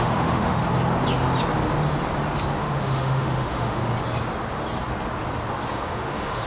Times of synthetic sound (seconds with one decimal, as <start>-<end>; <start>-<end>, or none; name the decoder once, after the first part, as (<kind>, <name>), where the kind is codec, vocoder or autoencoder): 0.0-0.6 (autoencoder, DAC-VAE); 2.6-3.8; 5.7-6.5